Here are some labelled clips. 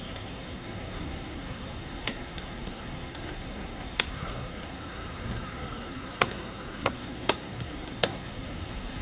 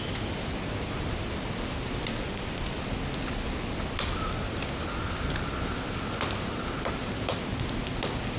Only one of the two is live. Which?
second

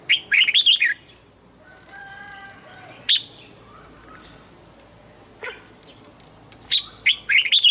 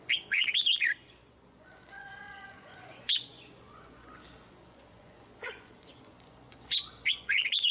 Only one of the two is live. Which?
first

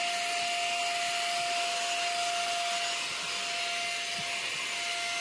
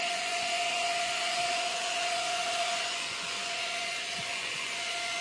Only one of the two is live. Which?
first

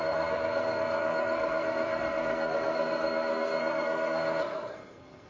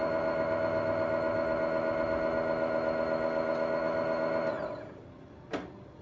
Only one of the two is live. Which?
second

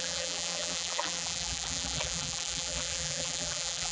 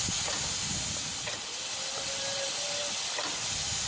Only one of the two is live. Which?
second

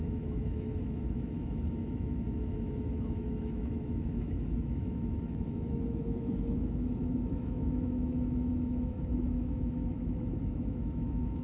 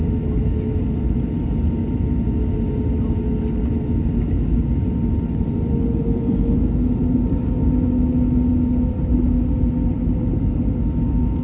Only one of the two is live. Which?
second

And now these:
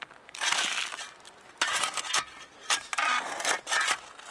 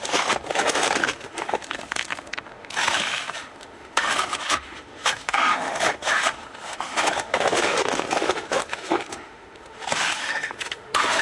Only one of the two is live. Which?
first